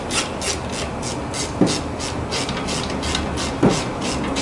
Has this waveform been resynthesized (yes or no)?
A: no